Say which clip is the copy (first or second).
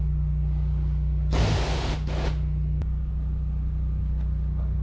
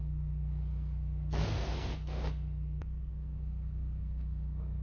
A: second